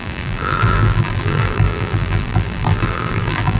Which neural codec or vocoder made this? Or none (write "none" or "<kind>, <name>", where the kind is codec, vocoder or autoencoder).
vocoder, BigVGAN v2